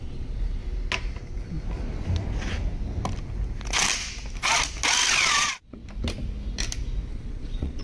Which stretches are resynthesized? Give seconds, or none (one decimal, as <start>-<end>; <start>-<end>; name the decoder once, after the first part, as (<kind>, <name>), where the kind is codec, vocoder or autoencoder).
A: 0.0-0.6 (vocoder, Vocos); 5.3-5.8; 7.1-7.8